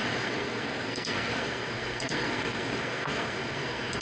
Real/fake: fake